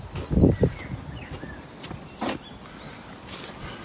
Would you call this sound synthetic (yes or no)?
no